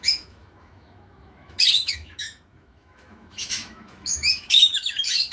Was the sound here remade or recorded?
remade